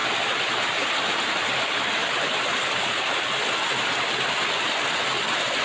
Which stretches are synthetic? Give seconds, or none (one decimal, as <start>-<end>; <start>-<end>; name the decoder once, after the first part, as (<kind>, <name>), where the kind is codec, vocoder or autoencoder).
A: none